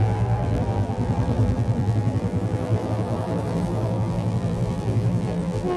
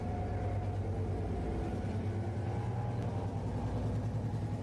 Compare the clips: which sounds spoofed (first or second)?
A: first